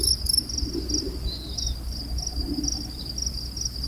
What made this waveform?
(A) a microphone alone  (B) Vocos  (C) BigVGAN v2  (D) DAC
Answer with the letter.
A